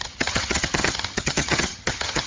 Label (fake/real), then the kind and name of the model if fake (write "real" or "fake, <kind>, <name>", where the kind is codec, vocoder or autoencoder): fake, vocoder, HiFi-GAN